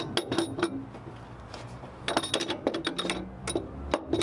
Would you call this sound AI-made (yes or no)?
no